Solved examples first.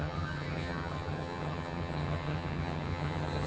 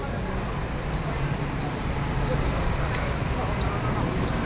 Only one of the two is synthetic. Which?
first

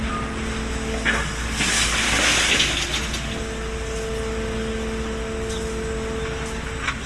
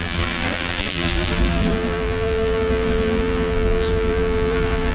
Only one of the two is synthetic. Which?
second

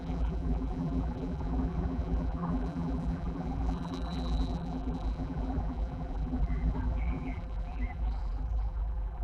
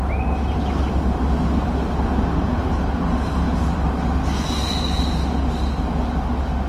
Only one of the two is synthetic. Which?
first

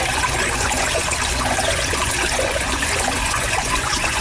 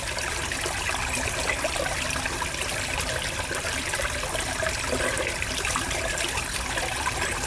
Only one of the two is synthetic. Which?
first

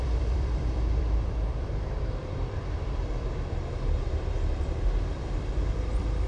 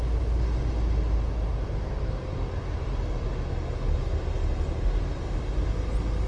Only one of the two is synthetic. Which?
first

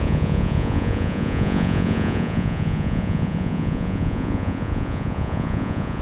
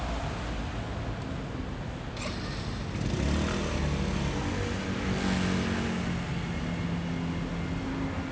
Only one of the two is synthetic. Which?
first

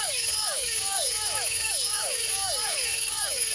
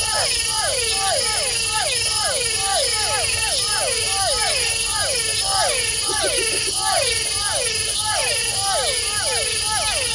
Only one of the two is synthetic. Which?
first